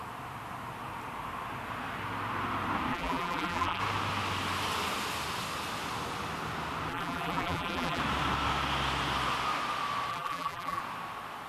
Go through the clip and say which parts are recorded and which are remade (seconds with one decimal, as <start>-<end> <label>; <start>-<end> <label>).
0.0-2.9 recorded; 2.9-3.8 remade; 3.8-6.9 recorded; 6.9-8.0 remade; 8.0-10.1 recorded; 10.1-10.8 remade; 10.8-11.5 recorded